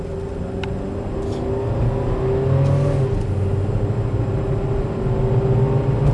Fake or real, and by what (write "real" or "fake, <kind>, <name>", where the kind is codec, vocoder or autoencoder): real